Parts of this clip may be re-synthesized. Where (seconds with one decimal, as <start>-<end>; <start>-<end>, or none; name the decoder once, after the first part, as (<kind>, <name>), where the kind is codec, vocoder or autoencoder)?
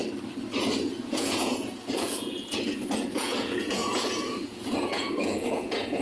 0.8-6.0 (vocoder, Vocos)